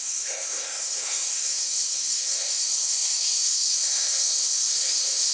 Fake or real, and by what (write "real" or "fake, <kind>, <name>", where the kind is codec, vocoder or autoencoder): fake, codec, SNAC